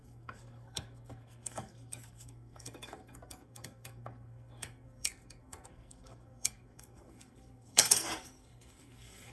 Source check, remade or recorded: remade